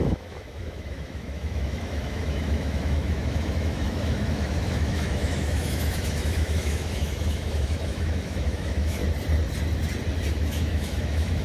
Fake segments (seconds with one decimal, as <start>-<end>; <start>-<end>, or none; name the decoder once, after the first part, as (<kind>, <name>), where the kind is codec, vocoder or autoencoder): 0.0-9.0 (autoencoder, DAC-VAE); 10.3-11.4

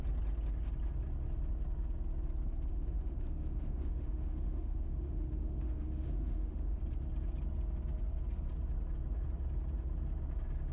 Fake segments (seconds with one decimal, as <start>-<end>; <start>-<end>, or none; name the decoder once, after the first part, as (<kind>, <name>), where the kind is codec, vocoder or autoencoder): 2.7-6.8 (autoencoder, DAC-VAE)

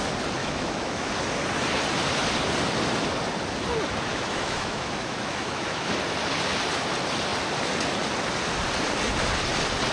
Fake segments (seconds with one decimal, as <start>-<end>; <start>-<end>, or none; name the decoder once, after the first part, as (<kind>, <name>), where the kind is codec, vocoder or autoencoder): 0.4-1.1 (autoencoder, DAC-VAE); 4.1-5.9

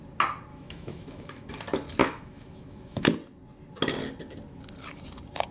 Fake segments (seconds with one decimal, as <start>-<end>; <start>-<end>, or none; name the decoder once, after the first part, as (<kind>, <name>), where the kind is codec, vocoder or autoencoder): 0.5-1.5 (autoencoder, DAC-VAE); 2.0-3.0